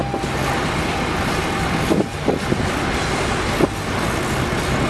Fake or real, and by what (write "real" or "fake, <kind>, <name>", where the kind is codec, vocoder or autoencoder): real